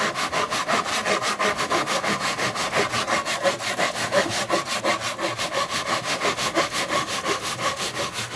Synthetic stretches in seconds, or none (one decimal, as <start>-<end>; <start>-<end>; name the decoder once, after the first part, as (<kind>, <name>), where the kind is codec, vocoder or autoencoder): 0.0-0.9 (autoencoder, DAC-VAE); 1.6-2.8; 3.8-4.4; 5.4-8.4